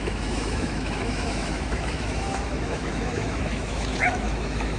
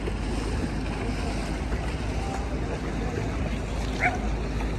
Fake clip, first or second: first